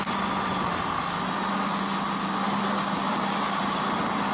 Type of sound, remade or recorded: recorded